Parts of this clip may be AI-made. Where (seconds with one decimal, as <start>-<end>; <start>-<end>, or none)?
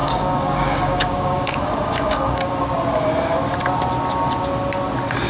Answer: 0.0-2.6